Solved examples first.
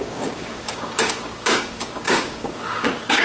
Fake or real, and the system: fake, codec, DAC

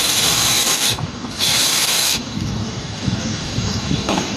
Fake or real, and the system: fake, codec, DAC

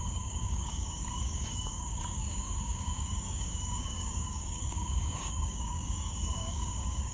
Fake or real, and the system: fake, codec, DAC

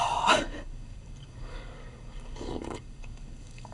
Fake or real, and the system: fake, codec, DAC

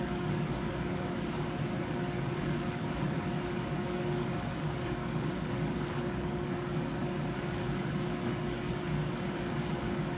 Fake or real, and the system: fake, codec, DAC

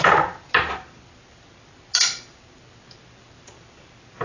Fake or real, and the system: real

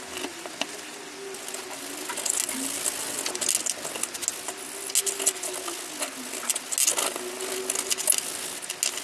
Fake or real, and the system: real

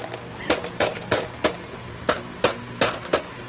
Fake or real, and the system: real